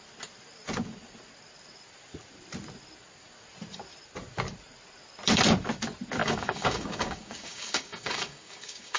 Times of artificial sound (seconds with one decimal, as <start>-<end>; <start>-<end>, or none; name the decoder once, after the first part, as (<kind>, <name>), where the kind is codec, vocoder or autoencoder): 6.2-9.0 (codec, DAC)